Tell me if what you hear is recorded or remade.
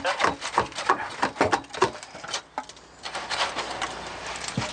recorded